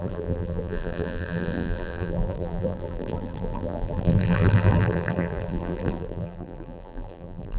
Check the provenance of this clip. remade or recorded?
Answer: remade